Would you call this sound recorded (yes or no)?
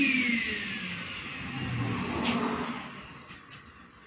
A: yes